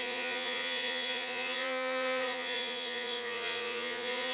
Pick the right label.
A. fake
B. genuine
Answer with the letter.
A